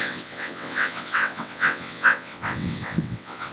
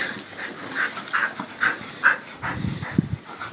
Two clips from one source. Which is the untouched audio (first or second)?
second